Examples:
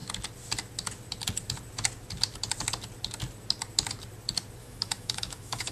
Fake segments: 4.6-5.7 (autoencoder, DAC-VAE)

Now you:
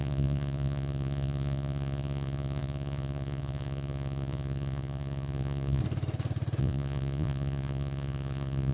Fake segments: 0.0-5.8 (vocoder, Vocos); 6.6-8.7

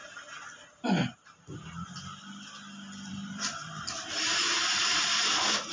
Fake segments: 3.1-5.7 (vocoder, BigVGAN v2)

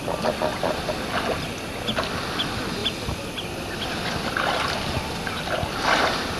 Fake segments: 0.5-1.2 (vocoder, BigVGAN v2); 2.8-6.4